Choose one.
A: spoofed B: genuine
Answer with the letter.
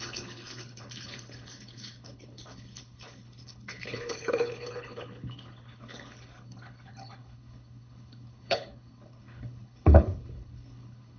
A